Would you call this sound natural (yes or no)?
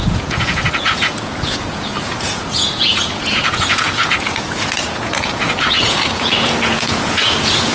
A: no